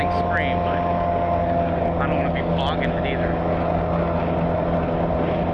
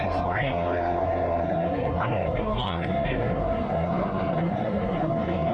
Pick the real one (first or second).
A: first